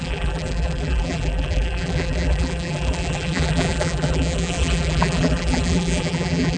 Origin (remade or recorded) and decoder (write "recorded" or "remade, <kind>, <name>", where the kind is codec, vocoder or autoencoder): remade, vocoder, BigVGAN v2